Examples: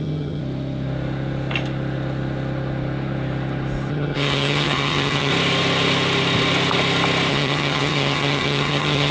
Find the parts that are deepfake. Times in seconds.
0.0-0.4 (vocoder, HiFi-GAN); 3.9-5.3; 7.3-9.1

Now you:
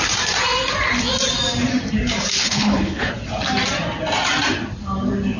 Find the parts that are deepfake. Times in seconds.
2.4-3.1 (codec, HILCodec)

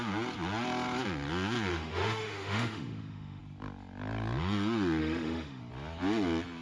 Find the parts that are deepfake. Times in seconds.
1.7-3.4 (autoencoder, DAC-VAE); 5.0-5.6

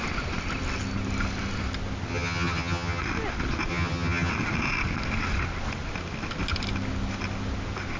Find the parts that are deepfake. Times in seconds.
2.1-3.0 (vocoder, HiFi-GAN); 3.7-4.3

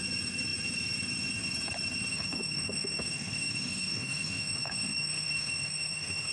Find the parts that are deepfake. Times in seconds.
2.1-6.3 (autoencoder, DAC-VAE)